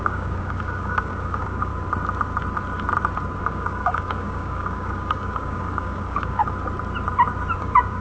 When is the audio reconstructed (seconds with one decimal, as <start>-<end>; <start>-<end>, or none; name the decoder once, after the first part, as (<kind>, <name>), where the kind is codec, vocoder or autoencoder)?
0.0-1.7 (codec, DAC); 3.4-6.4; 7.6-8.0